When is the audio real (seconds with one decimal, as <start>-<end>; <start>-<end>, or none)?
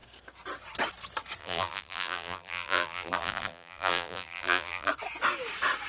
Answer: 0.0-1.4; 4.9-5.9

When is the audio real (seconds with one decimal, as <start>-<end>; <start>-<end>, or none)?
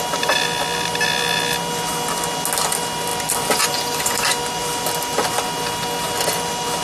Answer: 0.0-3.1; 5.3-6.8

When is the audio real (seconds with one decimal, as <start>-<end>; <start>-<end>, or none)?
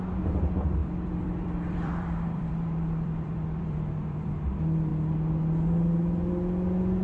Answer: 0.0-0.8; 4.3-7.0